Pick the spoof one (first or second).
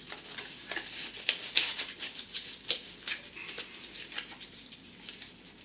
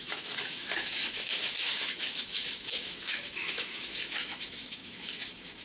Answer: second